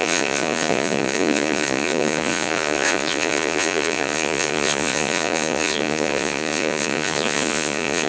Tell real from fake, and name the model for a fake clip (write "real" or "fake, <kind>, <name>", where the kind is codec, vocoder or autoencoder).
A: fake, vocoder, Vocos